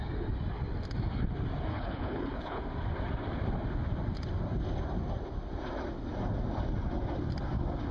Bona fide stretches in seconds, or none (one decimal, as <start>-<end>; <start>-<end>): 0.0-1.7; 2.6-7.9